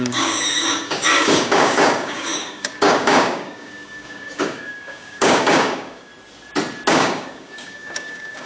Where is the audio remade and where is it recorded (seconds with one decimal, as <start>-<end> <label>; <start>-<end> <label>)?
0.0-6.1 remade; 6.1-6.9 recorded; 6.9-8.5 remade